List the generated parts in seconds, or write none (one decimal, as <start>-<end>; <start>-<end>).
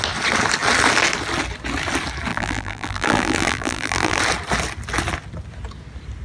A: 2.3-4.2